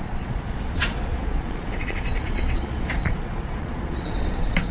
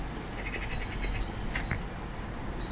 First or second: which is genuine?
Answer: second